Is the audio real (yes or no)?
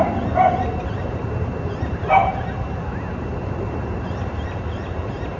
no